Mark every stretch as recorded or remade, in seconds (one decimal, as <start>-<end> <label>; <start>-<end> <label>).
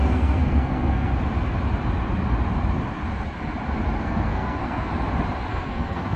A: 0.0-1.1 remade; 1.1-4.0 recorded; 4.0-4.9 remade; 4.9-5.5 recorded; 5.5-6.2 remade